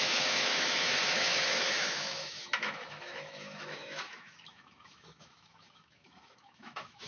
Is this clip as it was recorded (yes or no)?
no